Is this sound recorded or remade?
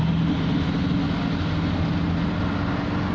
recorded